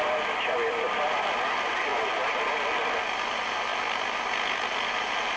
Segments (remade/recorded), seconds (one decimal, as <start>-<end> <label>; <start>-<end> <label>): 0.0-1.9 recorded; 1.9-2.4 remade; 2.4-5.4 recorded